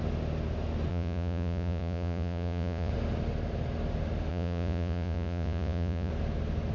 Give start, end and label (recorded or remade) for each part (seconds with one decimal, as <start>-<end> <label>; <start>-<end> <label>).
0.0-0.9 recorded; 0.9-2.9 remade; 2.9-4.3 recorded; 4.3-6.1 remade; 6.1-6.7 recorded